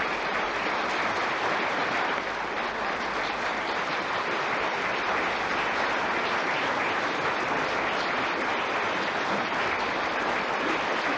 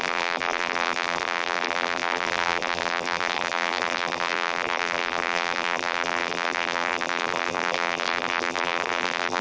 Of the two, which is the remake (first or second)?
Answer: second